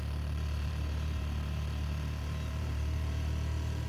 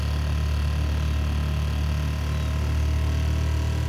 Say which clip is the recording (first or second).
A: second